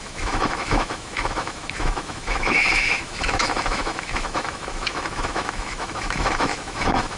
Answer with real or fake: fake